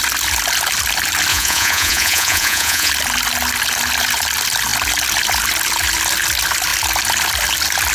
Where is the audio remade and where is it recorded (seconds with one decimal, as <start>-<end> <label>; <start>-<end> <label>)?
0.0-1.3 recorded; 1.3-2.9 remade; 2.9-7.9 recorded